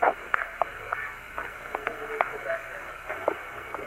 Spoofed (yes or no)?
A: yes